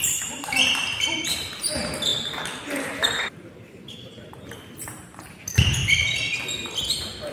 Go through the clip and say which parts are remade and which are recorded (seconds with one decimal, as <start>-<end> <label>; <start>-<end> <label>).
0.0-2.1 remade; 2.1-2.8 recorded; 2.8-5.8 remade; 5.8-7.3 recorded